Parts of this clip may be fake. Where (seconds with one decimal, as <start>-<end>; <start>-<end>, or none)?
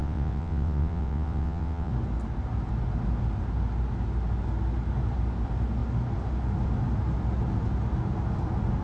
0.0-1.9